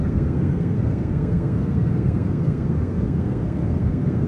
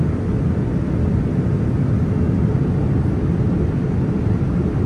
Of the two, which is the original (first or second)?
second